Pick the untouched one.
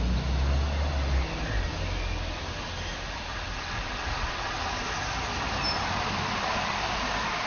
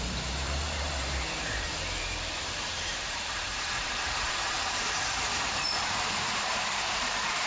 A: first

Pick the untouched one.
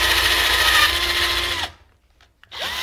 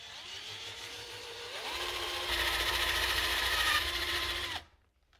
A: first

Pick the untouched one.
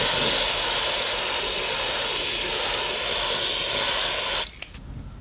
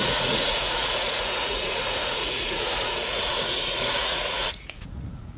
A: first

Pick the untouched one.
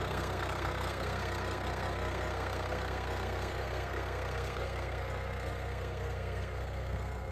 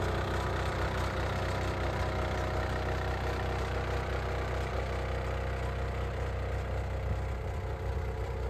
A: second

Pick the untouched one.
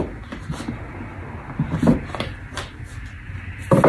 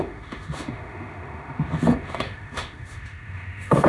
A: first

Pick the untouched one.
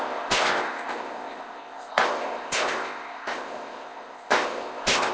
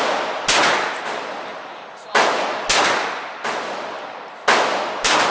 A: second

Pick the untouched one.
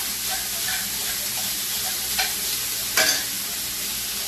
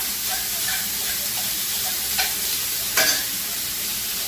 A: first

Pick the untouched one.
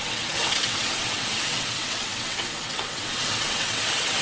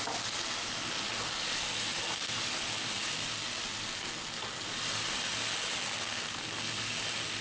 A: second